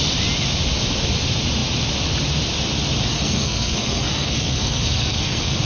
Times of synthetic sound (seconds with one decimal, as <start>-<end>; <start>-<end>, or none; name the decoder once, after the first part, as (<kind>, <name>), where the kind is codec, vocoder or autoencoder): 3.1-5.6 (codec, SNAC)

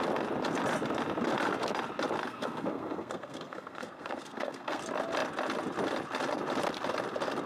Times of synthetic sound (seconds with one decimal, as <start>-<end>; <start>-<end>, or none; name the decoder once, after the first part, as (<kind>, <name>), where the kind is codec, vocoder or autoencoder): 2.2-4.8 (codec, SNAC)

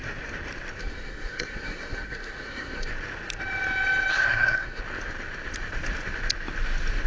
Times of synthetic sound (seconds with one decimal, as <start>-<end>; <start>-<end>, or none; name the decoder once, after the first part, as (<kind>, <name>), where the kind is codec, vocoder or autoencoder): 0.8-2.9 (codec, SNAC); 4.1-4.8

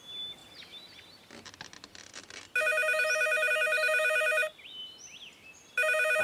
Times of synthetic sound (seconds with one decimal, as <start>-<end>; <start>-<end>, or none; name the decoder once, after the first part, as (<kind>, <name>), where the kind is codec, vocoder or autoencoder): none

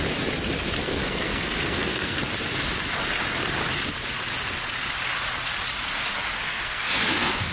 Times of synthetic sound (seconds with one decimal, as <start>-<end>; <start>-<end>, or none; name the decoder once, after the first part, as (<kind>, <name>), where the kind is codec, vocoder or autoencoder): 0.8-2.2 (codec, SNAC); 6.4-7.5

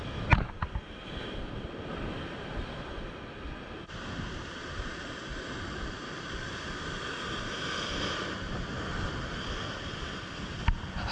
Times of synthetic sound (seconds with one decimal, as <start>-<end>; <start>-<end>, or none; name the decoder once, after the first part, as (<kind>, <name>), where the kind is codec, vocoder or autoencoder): none

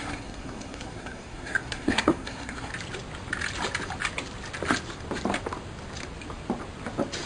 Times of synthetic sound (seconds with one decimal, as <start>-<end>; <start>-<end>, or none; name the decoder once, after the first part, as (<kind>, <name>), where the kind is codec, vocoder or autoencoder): 0.0-2.7 (codec, SNAC)